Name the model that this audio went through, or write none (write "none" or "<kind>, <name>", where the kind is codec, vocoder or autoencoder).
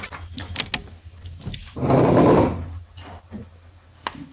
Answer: none